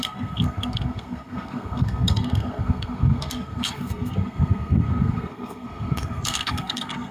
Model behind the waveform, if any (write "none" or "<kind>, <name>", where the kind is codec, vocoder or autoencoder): codec, SNAC